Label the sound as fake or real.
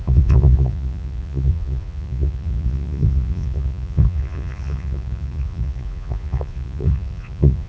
fake